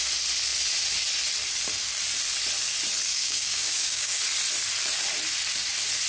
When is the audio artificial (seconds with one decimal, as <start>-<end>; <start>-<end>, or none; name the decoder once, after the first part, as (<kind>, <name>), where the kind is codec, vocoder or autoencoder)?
3.1-4.2 (codec, DAC)